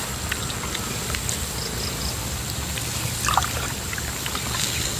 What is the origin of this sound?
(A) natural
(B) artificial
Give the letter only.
A